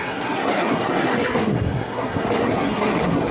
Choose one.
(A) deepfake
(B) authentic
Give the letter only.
A